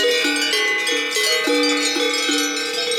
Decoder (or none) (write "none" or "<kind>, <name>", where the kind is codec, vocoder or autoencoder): none